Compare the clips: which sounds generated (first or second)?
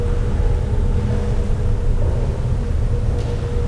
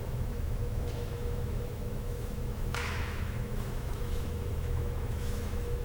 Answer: second